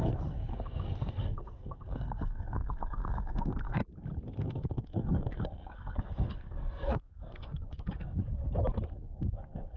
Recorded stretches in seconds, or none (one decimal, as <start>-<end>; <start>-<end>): 3.8-4.4; 8.2-8.9